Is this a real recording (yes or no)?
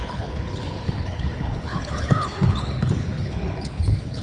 no